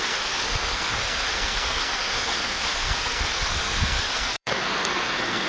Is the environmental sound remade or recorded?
remade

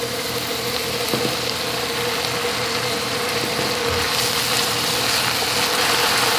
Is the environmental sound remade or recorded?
recorded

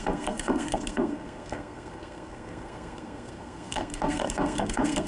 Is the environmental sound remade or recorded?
remade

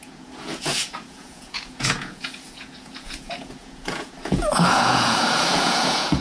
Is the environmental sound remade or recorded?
remade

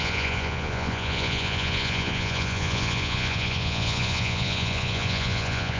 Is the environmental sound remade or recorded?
remade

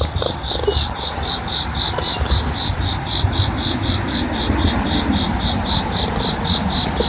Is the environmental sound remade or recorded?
recorded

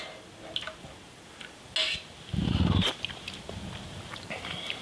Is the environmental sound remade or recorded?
recorded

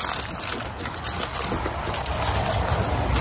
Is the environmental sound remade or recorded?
recorded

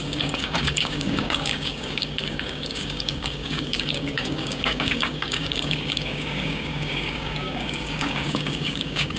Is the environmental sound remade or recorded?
remade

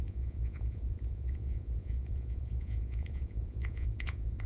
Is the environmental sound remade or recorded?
remade